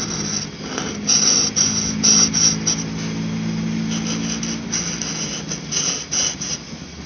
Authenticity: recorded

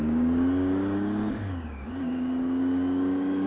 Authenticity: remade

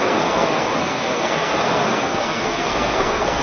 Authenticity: remade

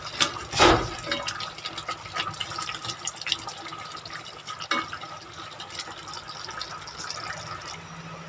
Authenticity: recorded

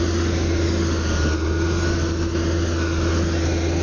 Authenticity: recorded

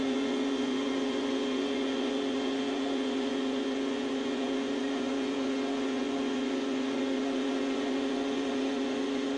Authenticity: remade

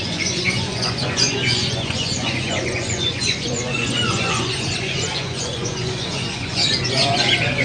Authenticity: remade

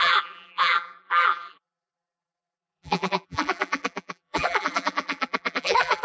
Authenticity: remade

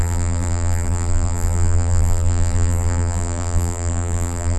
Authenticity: remade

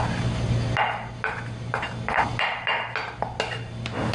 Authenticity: recorded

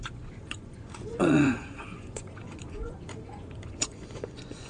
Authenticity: remade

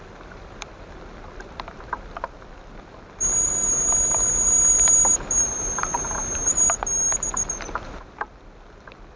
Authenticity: remade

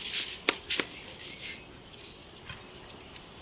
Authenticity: recorded